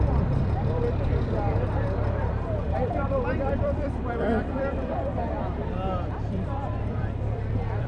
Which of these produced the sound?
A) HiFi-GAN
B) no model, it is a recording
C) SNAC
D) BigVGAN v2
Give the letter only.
D